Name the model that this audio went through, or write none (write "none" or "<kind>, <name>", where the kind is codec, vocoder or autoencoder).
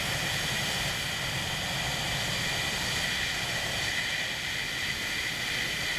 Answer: none